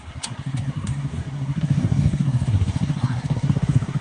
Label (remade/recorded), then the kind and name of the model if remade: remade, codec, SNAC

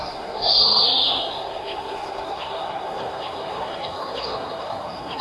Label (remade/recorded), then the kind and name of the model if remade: remade, codec, SNAC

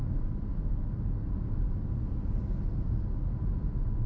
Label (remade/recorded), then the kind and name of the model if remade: recorded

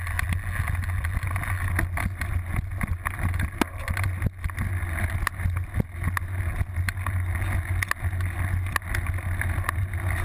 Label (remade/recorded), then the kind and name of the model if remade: recorded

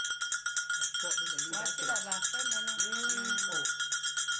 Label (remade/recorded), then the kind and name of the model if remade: recorded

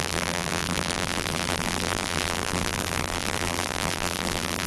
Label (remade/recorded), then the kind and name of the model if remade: remade, vocoder, BigVGAN v2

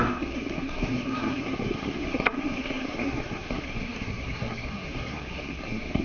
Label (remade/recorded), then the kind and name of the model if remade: remade, codec, SNAC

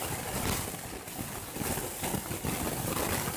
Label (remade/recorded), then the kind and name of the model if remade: recorded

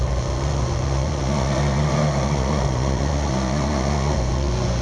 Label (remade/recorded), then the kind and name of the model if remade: remade, vocoder, Vocos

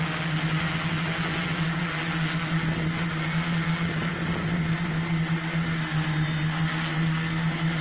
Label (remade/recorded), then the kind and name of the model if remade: recorded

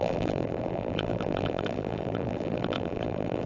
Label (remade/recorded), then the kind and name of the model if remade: remade, vocoder, BigVGAN v2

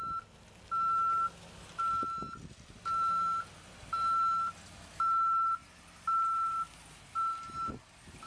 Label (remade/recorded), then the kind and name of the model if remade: recorded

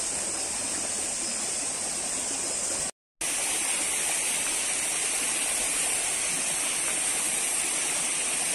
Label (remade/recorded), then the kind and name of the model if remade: recorded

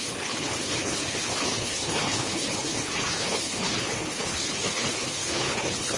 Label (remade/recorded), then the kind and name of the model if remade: remade, codec, HILCodec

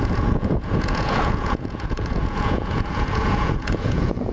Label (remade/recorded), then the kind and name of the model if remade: remade, vocoder, Vocos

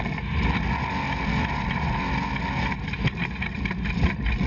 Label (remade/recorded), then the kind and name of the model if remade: recorded